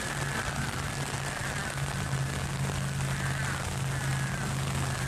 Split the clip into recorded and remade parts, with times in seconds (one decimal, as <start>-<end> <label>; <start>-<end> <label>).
0.0-5.1 recorded